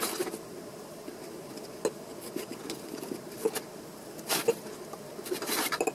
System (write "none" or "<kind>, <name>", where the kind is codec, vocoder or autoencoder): none